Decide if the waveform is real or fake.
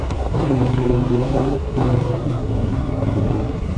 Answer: fake